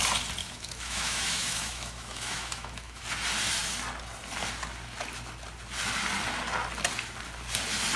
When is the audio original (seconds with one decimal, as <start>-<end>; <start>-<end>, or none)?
0.0-0.4; 3.0-8.0

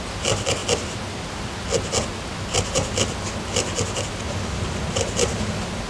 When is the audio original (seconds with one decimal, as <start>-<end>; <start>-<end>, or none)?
0.0-5.9

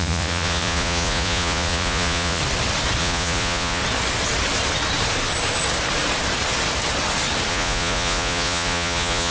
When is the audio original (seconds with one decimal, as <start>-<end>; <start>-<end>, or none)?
2.4-3.0; 3.8-7.5

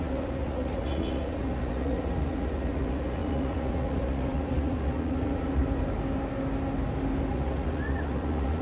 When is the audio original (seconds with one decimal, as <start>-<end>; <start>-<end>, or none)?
5.6-7.3

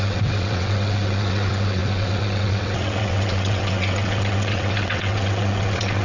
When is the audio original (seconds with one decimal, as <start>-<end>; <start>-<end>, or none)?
none